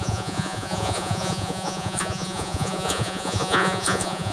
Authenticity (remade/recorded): remade